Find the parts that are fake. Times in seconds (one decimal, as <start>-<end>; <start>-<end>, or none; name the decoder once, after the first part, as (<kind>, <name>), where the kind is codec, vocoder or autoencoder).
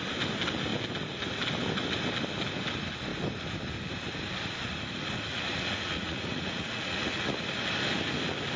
5.3-7.5 (vocoder, Vocos)